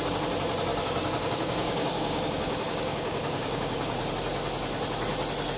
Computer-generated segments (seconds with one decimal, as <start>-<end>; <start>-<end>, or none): 0.7-4.1